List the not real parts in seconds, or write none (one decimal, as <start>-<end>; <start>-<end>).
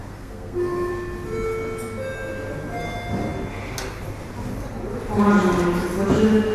0.0-0.9